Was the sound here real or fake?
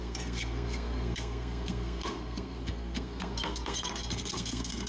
fake